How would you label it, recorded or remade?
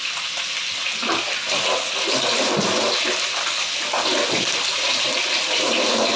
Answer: recorded